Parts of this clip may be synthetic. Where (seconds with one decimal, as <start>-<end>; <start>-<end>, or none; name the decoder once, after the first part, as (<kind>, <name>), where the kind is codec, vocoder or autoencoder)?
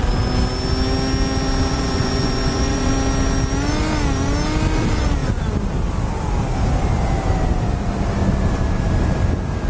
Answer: 1.7-2.9 (vocoder, Vocos)